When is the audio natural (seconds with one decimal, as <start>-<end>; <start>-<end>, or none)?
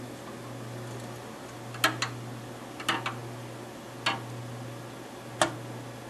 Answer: 0.0-6.1